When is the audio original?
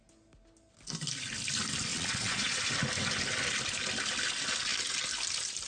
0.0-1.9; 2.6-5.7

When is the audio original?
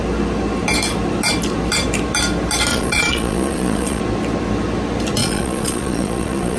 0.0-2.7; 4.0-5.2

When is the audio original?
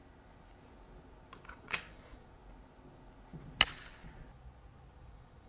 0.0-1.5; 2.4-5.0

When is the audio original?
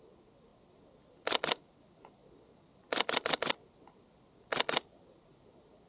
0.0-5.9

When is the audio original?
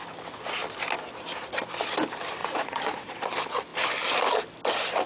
0.0-2.4; 3.1-5.1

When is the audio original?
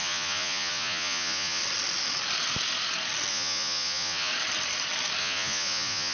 1.6-3.3; 4.3-5.2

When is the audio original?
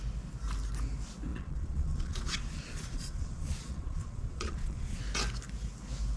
0.0-1.3; 5.0-6.2